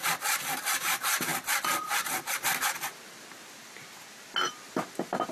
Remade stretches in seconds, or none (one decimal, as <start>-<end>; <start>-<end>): none